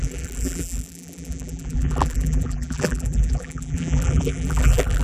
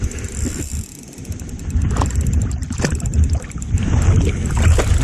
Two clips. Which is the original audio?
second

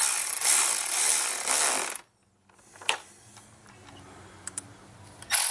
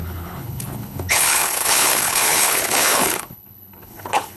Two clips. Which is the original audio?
first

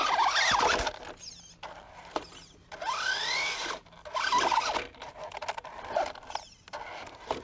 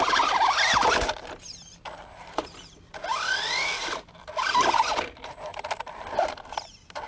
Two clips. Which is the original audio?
first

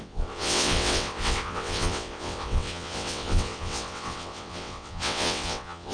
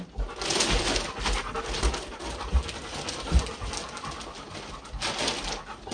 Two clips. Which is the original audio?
second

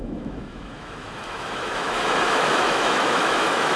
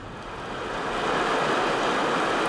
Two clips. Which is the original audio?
second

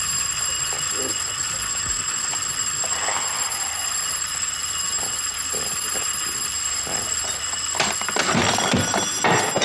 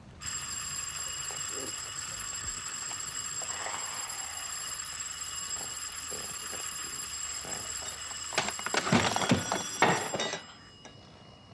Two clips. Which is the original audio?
first